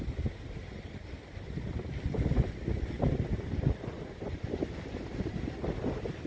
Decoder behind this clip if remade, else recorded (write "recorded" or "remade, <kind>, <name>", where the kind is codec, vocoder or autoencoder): recorded